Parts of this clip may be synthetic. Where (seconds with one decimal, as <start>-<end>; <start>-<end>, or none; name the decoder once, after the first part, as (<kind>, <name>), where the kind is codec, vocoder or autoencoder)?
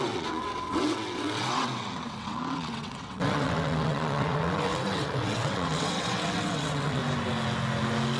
0.0-7.0 (vocoder, WaveNeXt)